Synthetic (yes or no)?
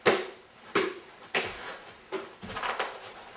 no